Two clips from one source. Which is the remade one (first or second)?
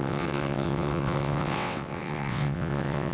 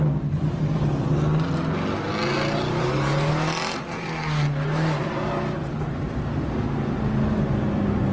first